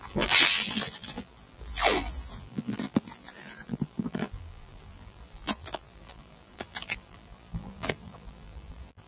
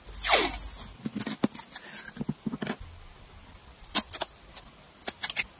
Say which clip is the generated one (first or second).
first